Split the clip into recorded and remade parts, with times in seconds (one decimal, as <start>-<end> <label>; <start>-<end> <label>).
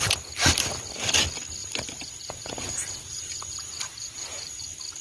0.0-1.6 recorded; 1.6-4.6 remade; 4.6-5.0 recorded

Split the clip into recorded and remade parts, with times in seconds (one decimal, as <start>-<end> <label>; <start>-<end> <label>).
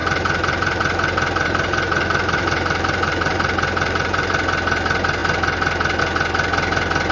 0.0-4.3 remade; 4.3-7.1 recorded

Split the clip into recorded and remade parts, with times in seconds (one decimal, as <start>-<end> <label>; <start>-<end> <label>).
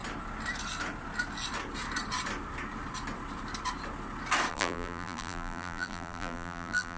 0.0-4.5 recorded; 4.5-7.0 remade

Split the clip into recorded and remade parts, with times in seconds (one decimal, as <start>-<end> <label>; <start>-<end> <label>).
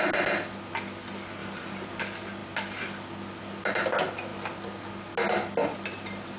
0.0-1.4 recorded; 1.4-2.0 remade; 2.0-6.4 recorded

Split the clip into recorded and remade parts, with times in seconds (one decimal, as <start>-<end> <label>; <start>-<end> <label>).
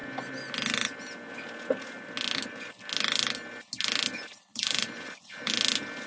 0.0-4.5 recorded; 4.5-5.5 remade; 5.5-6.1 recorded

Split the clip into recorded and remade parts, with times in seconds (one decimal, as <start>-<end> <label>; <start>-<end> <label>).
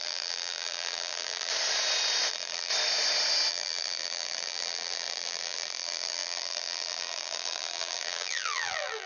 0.0-1.5 remade; 1.5-2.3 recorded; 2.3-2.7 remade; 2.7-3.5 recorded; 3.5-9.1 remade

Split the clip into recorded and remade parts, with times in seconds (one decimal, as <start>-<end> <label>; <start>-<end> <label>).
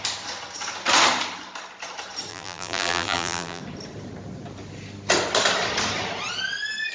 0.0-2.3 recorded; 2.3-3.6 remade; 3.6-6.9 recorded